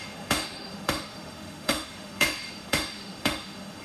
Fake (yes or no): yes